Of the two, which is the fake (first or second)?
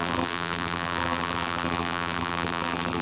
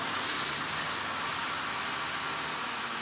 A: first